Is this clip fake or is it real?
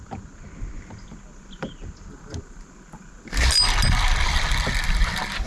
real